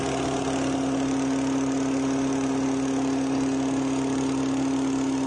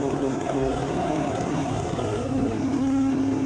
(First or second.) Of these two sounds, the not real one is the second